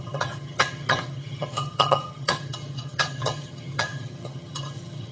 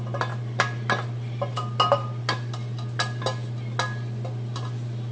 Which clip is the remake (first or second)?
first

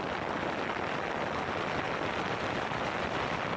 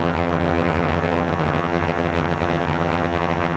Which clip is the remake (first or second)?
second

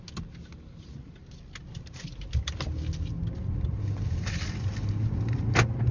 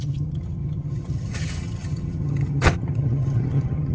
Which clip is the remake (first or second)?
second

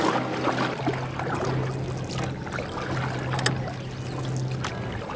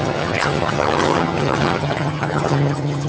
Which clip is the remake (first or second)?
second